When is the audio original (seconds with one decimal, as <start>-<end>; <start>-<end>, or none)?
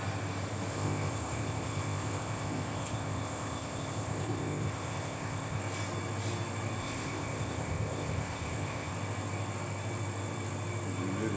0.0-0.7; 5.6-6.8; 8.9-11.4